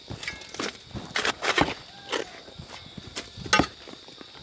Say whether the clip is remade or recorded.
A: recorded